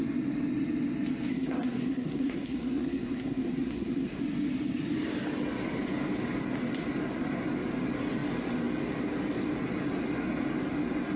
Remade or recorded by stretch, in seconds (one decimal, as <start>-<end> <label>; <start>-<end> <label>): 0.0-1.3 recorded; 1.3-4.2 remade; 4.2-11.2 recorded